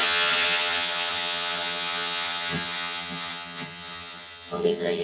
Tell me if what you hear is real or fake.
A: fake